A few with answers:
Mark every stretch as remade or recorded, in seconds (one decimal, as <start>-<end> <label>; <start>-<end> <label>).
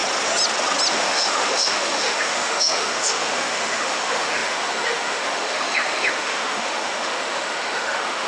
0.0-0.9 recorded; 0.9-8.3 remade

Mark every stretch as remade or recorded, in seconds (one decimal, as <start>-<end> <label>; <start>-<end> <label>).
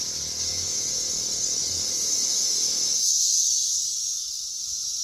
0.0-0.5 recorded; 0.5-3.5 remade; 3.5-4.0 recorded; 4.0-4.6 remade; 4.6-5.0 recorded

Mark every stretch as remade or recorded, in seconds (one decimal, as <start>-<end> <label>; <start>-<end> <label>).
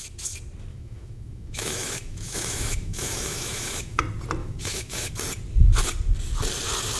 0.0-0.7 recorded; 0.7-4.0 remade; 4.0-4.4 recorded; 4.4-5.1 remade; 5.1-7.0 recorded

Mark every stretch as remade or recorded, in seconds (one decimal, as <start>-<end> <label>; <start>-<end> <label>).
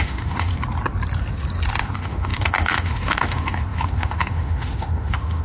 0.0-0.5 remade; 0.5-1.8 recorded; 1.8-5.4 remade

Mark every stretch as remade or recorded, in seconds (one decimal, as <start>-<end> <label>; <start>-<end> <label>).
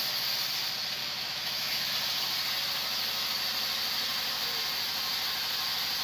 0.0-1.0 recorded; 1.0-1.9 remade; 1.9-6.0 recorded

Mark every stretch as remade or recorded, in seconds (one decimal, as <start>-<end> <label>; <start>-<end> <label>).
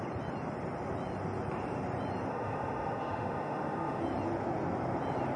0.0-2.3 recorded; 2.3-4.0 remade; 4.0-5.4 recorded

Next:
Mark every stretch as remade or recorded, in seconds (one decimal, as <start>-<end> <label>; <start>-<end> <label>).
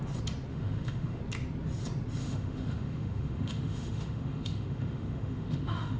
0.0-0.5 recorded; 0.5-1.2 remade; 1.2-2.2 recorded; 2.2-6.0 remade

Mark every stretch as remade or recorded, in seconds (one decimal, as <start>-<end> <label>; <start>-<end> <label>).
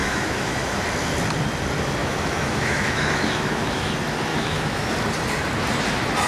0.0-0.8 remade; 0.8-2.0 recorded; 2.0-3.9 remade; 3.9-4.3 recorded; 4.3-4.9 remade; 4.9-6.3 recorded